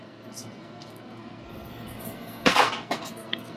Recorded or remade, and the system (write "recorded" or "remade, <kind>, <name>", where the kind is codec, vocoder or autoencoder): remade, codec, SNAC